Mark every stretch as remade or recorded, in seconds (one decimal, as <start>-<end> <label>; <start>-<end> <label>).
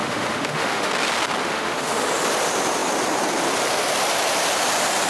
0.0-0.9 remade; 0.9-1.4 recorded; 1.4-2.0 remade; 2.0-5.1 recorded